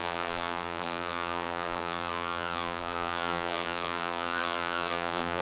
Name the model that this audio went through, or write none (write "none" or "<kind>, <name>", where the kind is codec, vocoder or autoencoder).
vocoder, BigVGAN v2